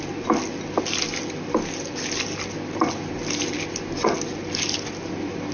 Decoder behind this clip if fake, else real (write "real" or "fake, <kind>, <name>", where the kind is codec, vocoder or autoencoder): real